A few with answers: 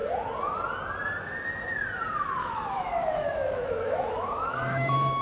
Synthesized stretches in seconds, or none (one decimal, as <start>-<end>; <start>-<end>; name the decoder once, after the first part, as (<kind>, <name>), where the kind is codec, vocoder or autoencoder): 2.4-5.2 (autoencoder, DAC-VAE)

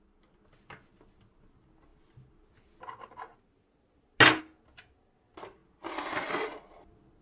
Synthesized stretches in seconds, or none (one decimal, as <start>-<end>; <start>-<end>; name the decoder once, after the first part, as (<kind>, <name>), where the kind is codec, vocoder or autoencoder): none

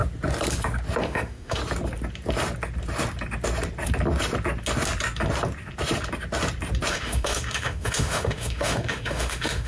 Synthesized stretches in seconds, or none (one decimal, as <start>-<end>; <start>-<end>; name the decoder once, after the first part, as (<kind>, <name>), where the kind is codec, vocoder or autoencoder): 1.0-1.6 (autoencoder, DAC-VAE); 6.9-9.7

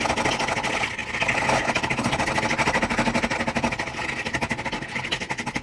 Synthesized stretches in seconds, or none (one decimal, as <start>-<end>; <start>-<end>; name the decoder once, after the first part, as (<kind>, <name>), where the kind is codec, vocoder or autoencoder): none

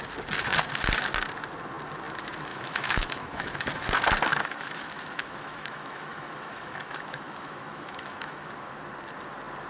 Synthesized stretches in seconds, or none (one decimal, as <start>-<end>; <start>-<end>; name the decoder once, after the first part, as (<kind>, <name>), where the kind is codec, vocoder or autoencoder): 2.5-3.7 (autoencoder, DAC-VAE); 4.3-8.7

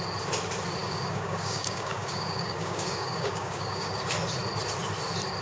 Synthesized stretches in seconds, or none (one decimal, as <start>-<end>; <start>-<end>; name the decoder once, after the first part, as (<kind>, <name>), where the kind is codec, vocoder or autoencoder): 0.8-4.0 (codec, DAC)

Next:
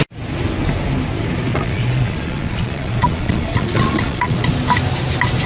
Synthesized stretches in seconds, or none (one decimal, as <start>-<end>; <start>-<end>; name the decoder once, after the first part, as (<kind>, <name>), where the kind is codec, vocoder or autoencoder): 1.5-4.5 (vocoder, Vocos)